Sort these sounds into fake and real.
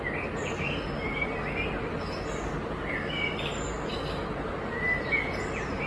real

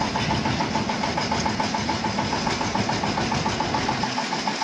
real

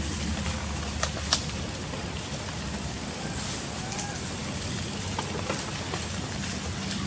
real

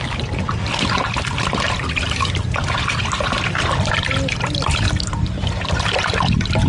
real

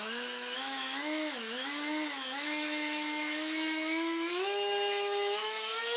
fake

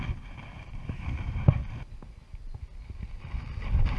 real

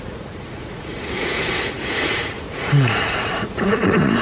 fake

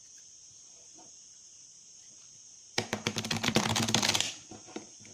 fake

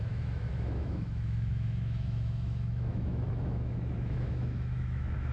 fake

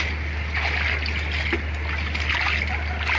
real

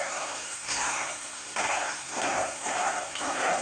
fake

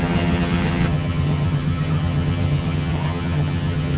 fake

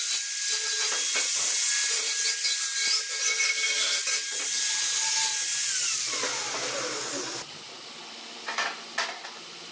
real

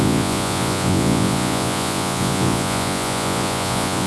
fake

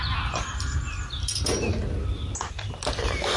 real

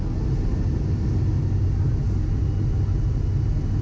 real